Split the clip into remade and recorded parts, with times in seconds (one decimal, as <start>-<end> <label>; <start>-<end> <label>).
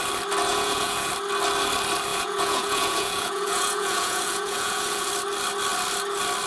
0.0-0.5 recorded; 0.5-1.1 remade; 1.1-2.1 recorded; 2.1-5.1 remade; 5.1-6.5 recorded